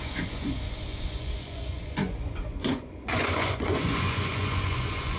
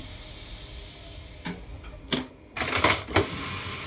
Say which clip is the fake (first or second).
first